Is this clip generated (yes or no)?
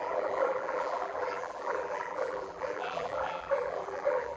yes